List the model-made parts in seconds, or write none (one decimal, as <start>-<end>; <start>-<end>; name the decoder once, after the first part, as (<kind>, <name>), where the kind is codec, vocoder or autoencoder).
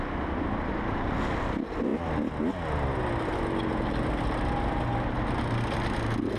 none